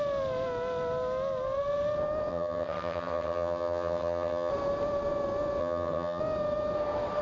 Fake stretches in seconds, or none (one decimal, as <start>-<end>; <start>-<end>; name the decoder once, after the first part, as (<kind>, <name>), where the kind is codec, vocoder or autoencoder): 2.3-4.5 (vocoder, HiFi-GAN); 5.6-6.2